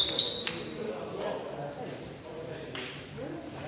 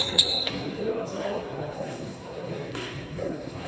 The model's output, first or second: second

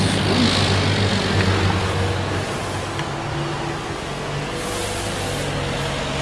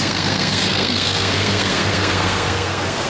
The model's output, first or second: second